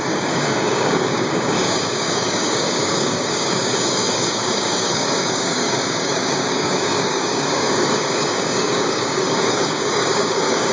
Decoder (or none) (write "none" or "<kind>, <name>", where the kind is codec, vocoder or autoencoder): codec, DAC